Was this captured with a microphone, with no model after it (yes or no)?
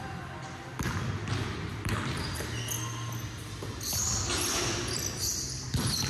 yes